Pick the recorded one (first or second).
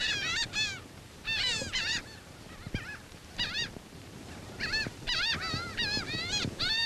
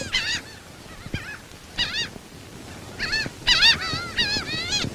second